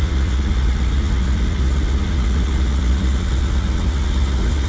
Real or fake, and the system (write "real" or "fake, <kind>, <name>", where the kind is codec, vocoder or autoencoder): fake, vocoder, Vocos